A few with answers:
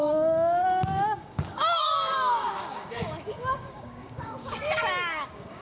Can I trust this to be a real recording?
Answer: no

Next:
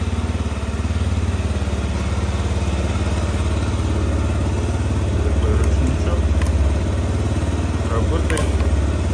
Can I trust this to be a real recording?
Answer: yes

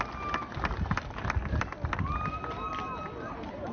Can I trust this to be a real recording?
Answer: yes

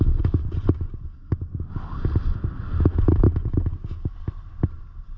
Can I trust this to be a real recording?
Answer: yes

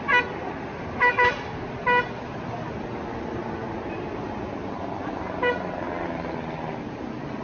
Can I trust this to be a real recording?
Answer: yes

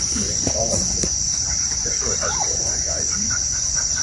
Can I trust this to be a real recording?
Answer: no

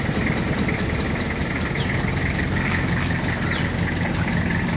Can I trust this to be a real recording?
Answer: yes